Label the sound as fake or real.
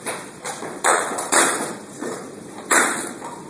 fake